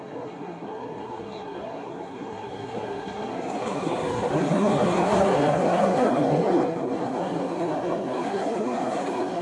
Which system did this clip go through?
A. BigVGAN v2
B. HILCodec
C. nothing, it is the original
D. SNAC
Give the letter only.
D